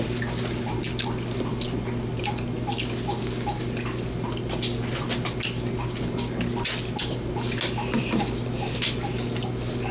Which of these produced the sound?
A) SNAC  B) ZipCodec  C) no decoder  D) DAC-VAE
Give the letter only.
C